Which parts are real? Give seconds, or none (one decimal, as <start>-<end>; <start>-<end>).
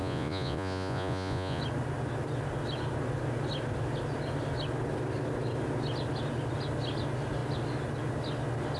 1.6-8.8